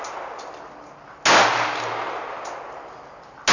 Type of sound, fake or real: real